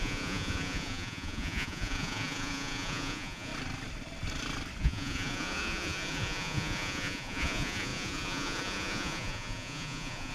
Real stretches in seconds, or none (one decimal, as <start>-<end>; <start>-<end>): 3.5-4.8